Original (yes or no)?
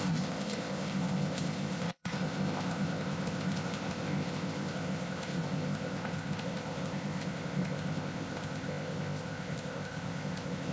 no